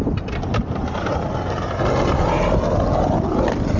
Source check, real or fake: real